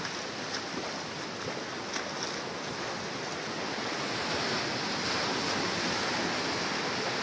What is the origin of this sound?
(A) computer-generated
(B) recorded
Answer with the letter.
B